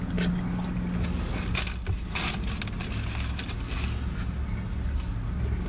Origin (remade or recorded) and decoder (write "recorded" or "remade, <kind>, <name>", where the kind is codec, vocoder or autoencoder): recorded